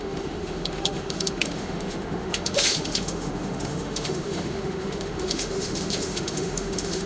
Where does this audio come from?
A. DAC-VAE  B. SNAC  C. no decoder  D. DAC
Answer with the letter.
A